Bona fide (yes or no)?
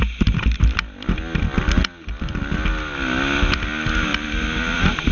yes